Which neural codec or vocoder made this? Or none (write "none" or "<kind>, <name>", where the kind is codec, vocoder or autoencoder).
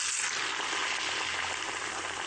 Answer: none